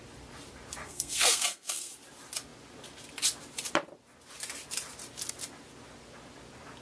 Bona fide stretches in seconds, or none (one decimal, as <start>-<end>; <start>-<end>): 0.0-0.8; 1.9-6.8